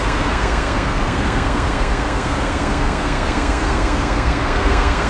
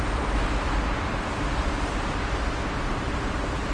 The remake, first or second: first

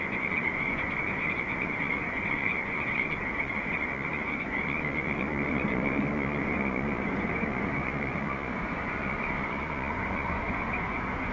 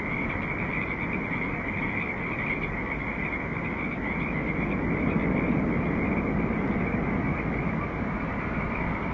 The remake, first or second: first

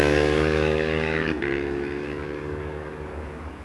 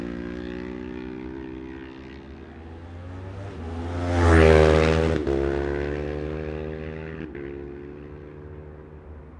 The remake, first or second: first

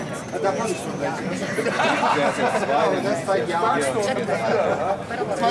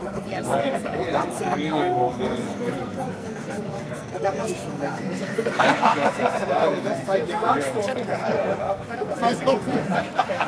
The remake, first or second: second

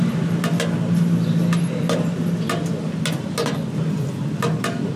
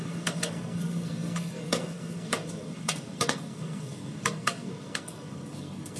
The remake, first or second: second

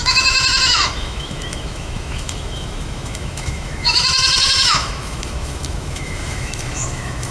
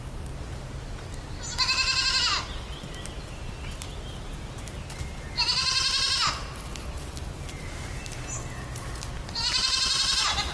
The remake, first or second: first